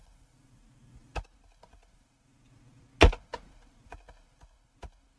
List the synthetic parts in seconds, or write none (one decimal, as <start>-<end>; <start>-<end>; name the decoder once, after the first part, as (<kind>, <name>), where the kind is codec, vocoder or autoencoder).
none